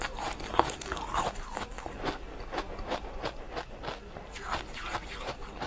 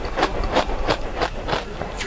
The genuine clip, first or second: first